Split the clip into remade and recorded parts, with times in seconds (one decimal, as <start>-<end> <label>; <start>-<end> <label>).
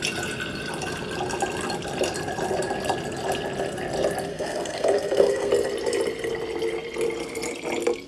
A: 0.0-4.3 recorded; 4.3-5.5 remade; 5.5-8.1 recorded